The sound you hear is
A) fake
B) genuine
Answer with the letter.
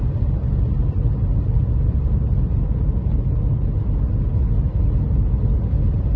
B